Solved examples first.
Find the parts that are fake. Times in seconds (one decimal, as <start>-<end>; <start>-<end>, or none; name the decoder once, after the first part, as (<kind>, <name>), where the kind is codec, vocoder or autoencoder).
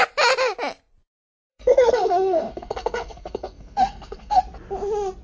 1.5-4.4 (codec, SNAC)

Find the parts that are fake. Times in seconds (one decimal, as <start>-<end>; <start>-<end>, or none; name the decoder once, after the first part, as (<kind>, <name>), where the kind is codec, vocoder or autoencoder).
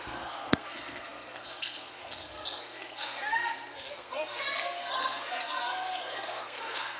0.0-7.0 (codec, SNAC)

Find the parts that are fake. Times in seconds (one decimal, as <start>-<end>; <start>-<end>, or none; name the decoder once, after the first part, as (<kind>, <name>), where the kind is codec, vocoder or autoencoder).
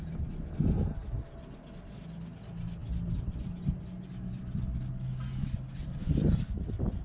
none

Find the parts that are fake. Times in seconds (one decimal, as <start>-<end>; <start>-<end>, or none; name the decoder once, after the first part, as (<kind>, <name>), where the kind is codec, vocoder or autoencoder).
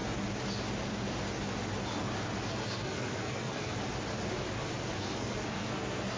2.5-3.8 (codec, SNAC); 5.0-6.2